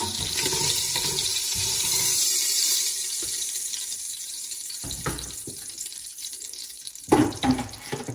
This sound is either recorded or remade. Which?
remade